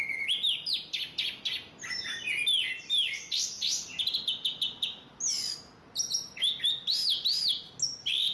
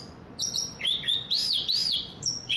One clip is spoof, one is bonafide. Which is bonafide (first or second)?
first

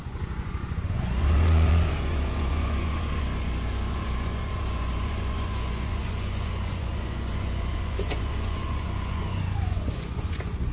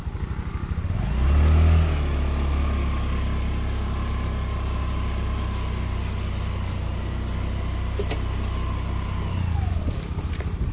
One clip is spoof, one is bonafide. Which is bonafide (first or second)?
second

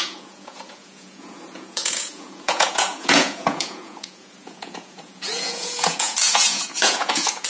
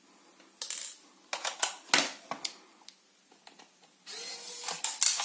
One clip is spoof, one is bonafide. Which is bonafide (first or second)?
second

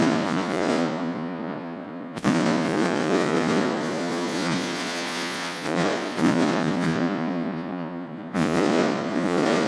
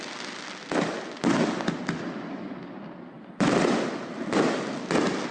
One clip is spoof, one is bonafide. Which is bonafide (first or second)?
second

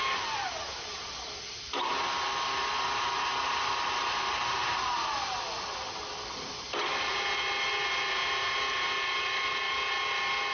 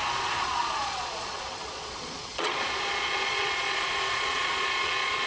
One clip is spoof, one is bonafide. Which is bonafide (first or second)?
first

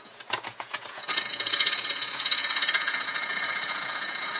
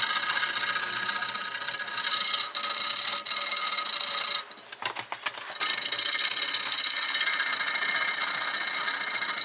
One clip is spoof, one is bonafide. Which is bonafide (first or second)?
second